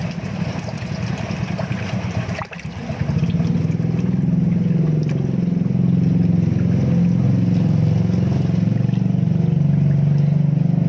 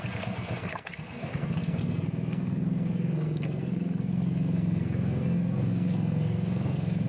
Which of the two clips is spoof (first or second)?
second